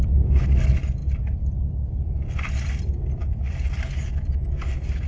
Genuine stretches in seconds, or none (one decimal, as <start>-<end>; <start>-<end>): 0.0-5.1